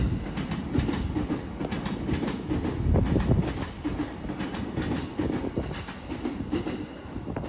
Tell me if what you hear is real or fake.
real